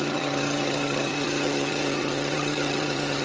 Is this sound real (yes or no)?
no